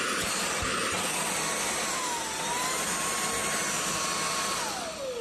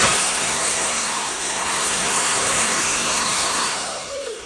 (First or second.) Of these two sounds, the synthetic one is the second